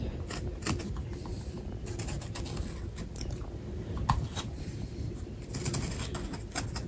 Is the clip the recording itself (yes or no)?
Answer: yes